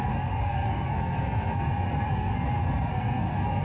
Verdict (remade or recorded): remade